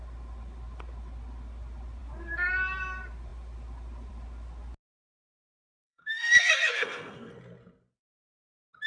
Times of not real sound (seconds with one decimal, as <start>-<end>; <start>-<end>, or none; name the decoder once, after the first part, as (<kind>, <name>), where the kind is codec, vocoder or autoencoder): 5.8-7.3 (codec, SNAC)